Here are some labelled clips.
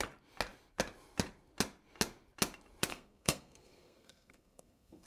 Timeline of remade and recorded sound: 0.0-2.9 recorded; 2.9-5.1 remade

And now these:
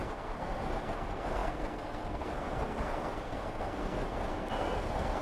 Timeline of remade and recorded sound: 0.0-5.2 remade

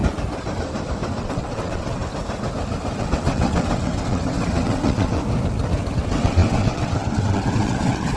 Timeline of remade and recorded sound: 0.0-1.2 recorded; 1.2-2.0 remade; 2.0-3.0 recorded; 3.0-5.2 remade; 5.2-5.9 recorded; 5.9-8.2 remade

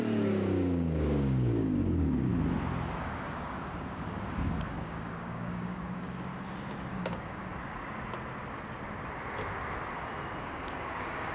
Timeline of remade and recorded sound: 0.0-2.3 remade; 2.3-2.9 recorded; 2.9-6.3 remade; 6.3-6.9 recorded; 6.9-7.5 remade; 7.5-10.4 recorded; 10.4-11.3 remade